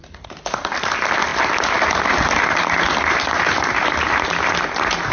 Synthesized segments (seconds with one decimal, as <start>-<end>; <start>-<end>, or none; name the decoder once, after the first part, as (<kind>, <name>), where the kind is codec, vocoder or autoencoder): none